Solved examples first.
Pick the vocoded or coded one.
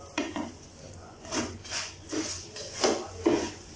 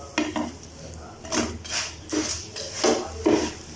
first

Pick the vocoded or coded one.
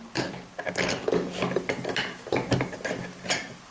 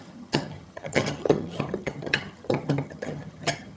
second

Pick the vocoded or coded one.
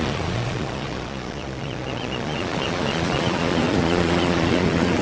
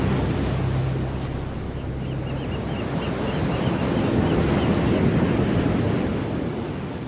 first